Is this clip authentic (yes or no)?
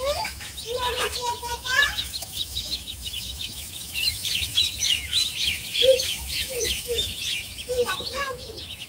no